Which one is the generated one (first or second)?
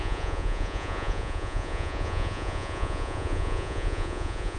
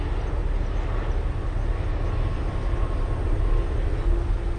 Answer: first